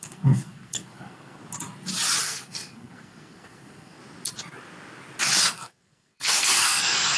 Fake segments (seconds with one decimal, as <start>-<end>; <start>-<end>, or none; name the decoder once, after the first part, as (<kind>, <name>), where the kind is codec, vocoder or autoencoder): 0.0-1.4 (codec, SNAC); 2.2-4.0; 5.4-7.2